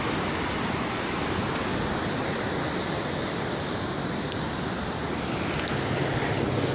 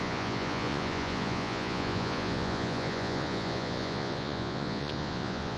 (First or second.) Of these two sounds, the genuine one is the first